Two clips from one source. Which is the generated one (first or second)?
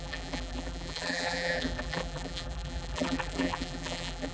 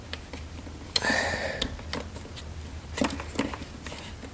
first